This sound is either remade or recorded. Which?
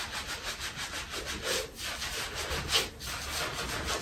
recorded